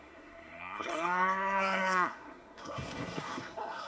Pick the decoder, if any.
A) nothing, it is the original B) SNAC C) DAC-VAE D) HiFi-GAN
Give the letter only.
B